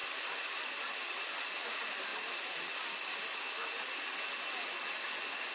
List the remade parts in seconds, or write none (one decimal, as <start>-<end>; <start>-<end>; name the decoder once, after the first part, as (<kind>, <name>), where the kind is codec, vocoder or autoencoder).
0.6-2.1 (vocoder, BigVGAN v2)